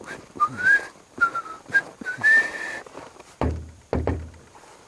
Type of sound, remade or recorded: remade